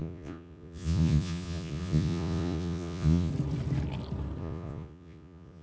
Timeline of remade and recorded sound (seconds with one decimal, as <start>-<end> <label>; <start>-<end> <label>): 0.0-3.3 remade; 3.3-4.4 recorded; 4.4-5.6 remade